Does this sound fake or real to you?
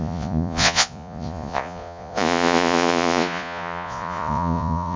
fake